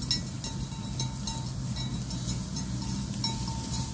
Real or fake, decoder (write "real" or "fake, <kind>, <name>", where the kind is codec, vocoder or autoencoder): real